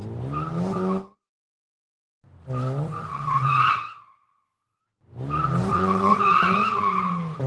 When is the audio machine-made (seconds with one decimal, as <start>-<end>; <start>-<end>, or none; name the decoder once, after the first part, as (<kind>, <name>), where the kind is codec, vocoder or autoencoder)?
3.1-4.8 (vocoder, WaveNeXt); 5.7-7.1